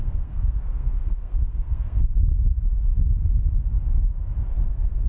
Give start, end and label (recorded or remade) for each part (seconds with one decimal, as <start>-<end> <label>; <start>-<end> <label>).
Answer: 0.0-2.3 remade; 2.3-4.6 recorded; 4.6-5.1 remade